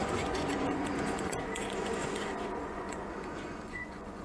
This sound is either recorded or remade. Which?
remade